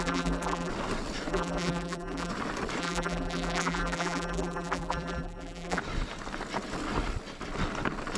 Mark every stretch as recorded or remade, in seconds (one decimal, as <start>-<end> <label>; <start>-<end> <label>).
0.0-0.7 remade; 0.7-1.3 recorded; 1.3-2.3 remade; 2.3-2.8 recorded; 2.8-5.8 remade; 5.8-8.2 recorded